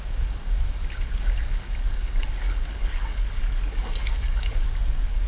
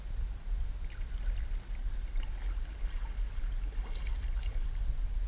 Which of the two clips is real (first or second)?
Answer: second